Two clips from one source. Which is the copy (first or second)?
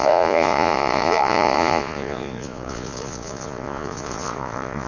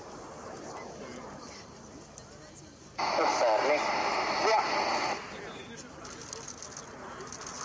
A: first